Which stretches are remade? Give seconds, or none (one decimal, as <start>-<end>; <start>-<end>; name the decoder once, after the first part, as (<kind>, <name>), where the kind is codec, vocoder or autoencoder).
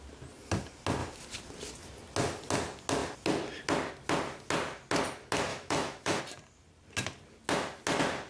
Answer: 5.5-6.2 (autoencoder, DAC-VAE)